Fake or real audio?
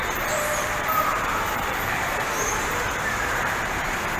fake